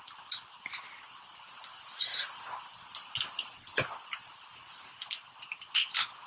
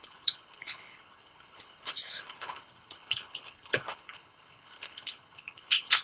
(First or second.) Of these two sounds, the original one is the first